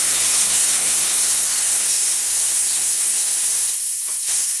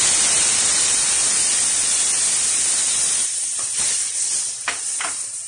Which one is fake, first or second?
first